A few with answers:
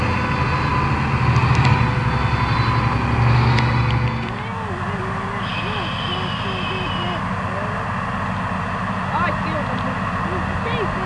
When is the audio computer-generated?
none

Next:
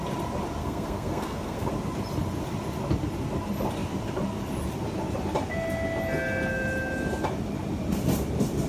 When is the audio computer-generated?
0.6-1.7 (codec, SNAC)

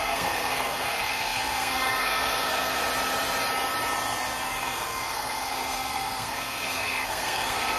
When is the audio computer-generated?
0.0-2.8 (codec, SNAC); 4.6-7.8

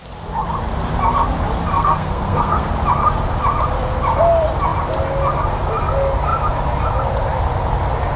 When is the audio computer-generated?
1.7-2.7 (codec, SNAC)